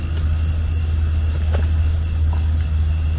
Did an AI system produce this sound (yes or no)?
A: no